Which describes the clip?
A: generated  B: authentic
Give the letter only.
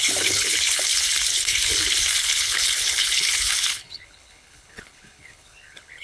A